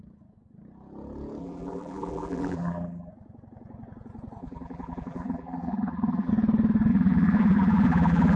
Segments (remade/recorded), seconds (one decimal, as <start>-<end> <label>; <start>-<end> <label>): 0.0-1.4 recorded; 1.4-3.1 remade; 3.1-4.4 recorded; 4.4-6.3 remade; 6.3-6.9 recorded; 6.9-8.4 remade